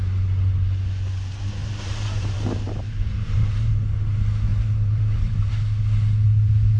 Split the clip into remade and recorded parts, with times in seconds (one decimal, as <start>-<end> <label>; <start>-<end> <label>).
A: 0.0-1.6 recorded; 1.6-3.7 remade; 3.7-4.5 recorded; 4.5-5.5 remade; 5.5-6.8 recorded